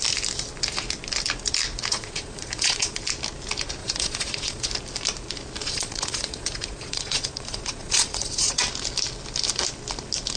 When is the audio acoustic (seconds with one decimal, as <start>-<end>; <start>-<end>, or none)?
0.0-1.9; 3.0-3.8; 4.7-5.6; 8.6-10.4